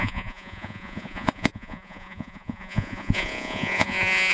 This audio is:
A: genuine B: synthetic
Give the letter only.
B